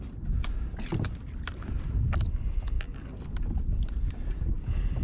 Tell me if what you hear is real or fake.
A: real